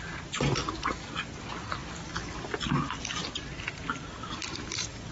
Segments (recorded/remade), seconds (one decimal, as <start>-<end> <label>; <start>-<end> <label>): 0.0-5.1 recorded